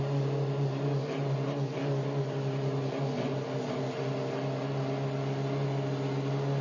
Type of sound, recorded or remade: recorded